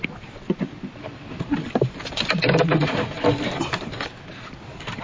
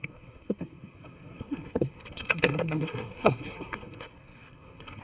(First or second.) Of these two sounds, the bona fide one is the first